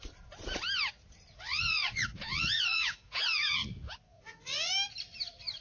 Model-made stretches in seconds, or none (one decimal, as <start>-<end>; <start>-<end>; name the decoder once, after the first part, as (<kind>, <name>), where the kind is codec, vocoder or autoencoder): 1.3-4.7 (vocoder, Vocos)